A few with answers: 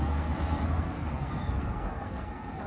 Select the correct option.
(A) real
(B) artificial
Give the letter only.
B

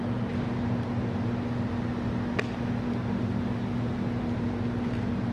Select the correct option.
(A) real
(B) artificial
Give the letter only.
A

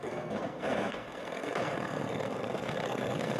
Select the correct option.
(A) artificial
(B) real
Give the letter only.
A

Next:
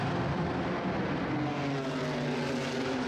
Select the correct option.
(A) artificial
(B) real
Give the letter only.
B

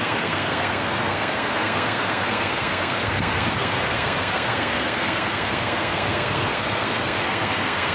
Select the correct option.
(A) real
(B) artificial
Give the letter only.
B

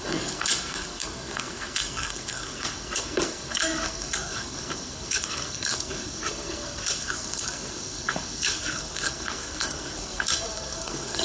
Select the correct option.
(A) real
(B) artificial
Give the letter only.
B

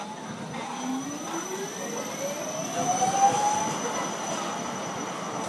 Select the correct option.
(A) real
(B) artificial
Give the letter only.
A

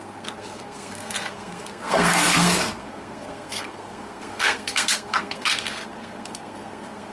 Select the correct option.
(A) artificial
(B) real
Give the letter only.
A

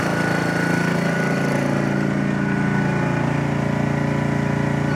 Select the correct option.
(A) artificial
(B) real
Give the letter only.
B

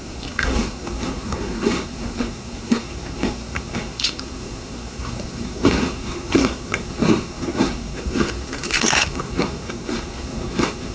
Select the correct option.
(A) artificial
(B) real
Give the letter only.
A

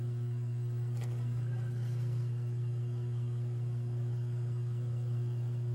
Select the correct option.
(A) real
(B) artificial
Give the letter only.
B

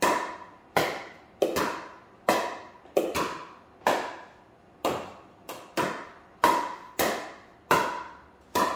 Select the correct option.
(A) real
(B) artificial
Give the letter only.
A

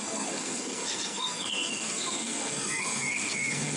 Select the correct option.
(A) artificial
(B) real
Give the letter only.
A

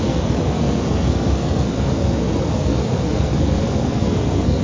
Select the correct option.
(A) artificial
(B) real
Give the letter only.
A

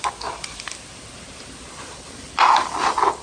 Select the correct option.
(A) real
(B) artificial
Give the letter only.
A